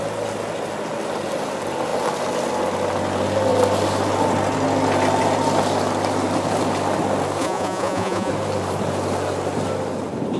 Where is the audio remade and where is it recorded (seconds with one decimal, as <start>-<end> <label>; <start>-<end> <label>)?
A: 0.0-7.4 recorded; 7.4-8.3 remade; 8.3-10.4 recorded